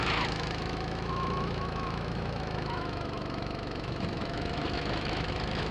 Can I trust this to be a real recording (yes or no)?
no